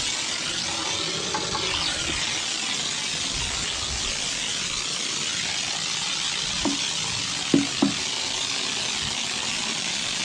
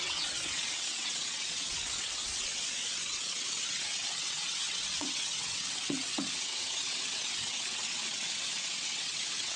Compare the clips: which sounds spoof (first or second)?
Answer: second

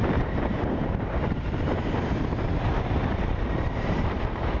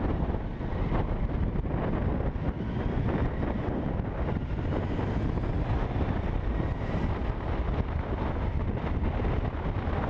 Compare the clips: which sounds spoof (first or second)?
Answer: first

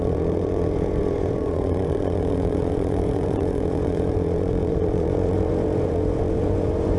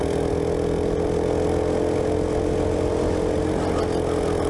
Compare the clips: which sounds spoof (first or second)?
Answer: first